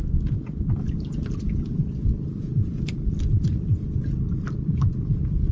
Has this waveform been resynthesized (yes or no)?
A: no